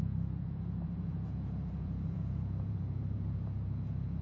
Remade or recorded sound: remade